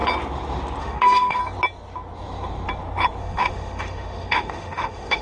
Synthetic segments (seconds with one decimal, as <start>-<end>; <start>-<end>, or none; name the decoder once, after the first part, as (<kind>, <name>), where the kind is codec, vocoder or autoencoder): 0.8-1.4 (autoencoder, DAC-VAE); 3.2-5.2